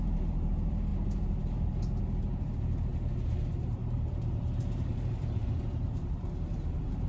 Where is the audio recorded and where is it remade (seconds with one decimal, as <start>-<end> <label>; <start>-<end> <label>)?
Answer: 0.0-2.9 remade; 2.9-3.6 recorded; 3.6-7.1 remade